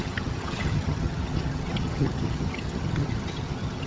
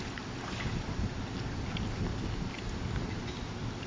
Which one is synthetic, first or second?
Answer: first